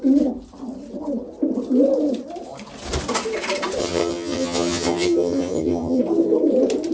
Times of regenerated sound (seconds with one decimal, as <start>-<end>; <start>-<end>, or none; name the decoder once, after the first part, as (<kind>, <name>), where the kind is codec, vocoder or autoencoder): 3.8-6.0 (vocoder, HiFi-GAN)